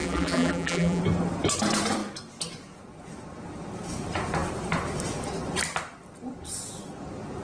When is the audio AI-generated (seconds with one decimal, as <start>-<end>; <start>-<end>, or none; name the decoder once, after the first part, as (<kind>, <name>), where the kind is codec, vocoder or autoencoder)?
0.0-1.0 (vocoder, BigVGAN v2)

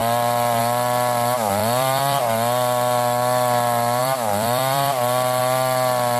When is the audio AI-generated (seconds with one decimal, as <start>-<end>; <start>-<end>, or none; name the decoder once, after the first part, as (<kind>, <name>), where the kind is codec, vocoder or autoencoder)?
1.6-2.2 (vocoder, BigVGAN v2); 4.0-5.4

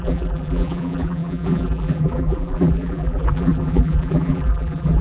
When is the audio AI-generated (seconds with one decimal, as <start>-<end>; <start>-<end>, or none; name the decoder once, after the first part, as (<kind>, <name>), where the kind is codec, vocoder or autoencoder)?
0.0-5.0 (vocoder, BigVGAN v2)

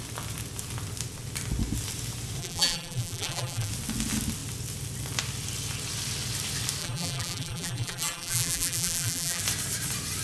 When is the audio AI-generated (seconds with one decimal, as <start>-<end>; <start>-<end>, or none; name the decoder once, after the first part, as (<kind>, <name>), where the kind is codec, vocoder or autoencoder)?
2.4-3.7 (vocoder, BigVGAN v2); 6.8-9.4

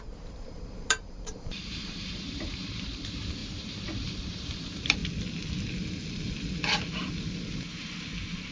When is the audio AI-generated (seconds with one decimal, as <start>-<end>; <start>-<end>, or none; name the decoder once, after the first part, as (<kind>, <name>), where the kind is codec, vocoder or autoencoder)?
0.0-5.0 (vocoder, BigVGAN v2); 7.2-8.5

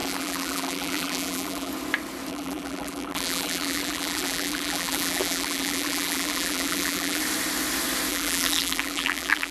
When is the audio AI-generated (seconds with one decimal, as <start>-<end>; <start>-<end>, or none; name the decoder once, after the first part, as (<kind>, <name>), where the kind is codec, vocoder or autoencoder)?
0.0-1.7 (vocoder, BigVGAN v2); 2.3-7.2; 8.1-9.5

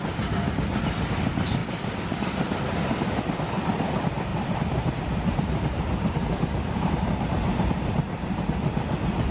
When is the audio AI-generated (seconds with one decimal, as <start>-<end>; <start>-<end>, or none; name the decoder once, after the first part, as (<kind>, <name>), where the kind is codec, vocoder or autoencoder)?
4.3-7.3 (vocoder, BigVGAN v2)

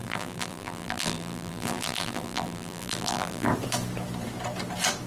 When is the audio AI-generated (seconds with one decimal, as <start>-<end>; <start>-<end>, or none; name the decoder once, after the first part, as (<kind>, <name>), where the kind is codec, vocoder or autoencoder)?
0.0-3.5 (vocoder, BigVGAN v2)